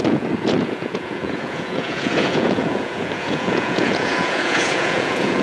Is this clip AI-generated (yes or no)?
yes